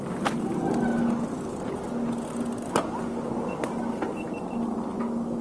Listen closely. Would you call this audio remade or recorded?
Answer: recorded